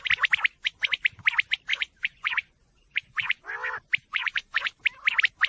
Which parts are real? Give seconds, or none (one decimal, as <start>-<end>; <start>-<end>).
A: 0.0-1.7; 3.4-4.0; 4.8-5.5